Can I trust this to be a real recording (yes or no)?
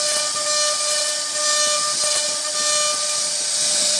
yes